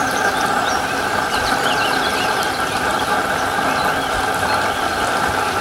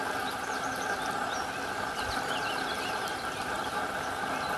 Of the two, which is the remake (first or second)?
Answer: first